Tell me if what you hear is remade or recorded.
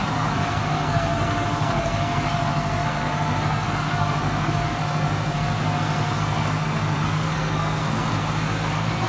remade